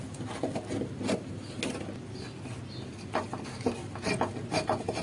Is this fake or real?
real